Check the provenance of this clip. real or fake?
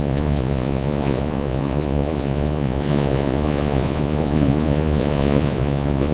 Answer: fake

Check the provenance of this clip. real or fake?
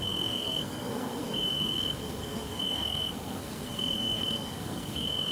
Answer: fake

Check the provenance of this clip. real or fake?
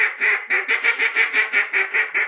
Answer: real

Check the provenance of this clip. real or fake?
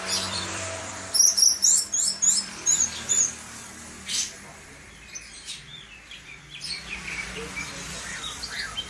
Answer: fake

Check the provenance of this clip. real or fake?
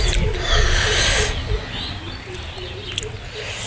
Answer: real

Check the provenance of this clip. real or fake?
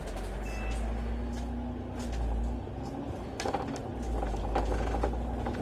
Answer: real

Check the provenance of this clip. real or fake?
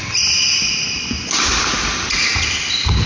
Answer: real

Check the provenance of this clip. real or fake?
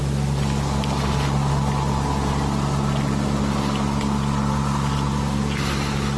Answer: real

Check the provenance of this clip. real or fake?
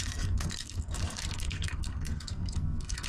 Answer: fake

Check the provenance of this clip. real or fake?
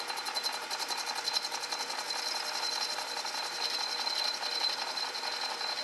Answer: fake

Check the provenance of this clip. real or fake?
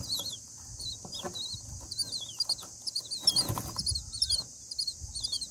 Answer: real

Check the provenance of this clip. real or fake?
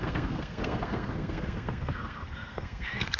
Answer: fake